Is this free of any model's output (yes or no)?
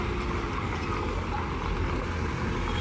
yes